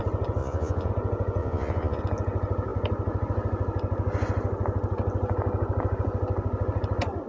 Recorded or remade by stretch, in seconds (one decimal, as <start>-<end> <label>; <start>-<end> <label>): 0.0-0.4 recorded; 0.4-0.9 remade; 0.9-1.4 recorded; 1.4-2.0 remade; 2.0-7.3 recorded